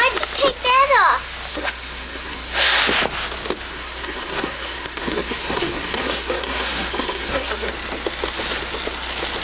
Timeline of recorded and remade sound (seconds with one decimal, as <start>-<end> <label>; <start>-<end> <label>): 0.0-1.5 recorded; 1.5-2.8 remade; 2.8-3.7 recorded; 3.7-7.7 remade; 7.7-9.4 recorded